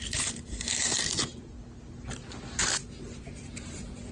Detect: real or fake real